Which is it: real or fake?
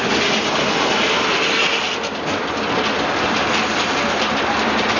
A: real